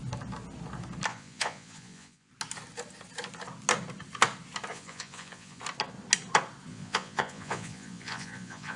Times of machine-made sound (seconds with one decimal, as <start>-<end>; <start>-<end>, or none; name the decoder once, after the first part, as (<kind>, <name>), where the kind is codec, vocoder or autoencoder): 1.1-2.3 (vocoder, Vocos); 4.7-5.6; 6.7-8.8